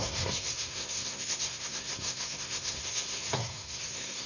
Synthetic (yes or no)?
yes